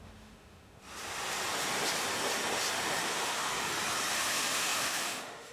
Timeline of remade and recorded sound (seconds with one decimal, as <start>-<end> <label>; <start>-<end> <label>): 0.0-0.8 remade; 0.8-3.0 recorded; 3.0-3.5 remade; 3.5-4.1 recorded; 4.1-5.5 remade